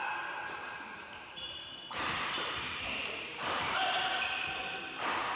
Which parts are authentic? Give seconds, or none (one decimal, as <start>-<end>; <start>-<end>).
0.0-0.6; 3.8-5.4